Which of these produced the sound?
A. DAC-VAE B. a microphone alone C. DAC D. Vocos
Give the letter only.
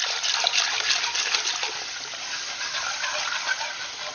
B